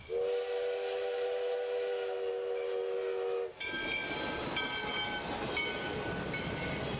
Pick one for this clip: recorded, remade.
recorded